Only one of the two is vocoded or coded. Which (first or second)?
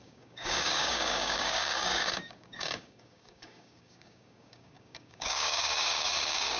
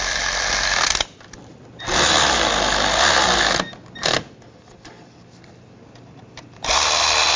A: first